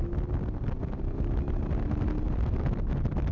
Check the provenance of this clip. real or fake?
real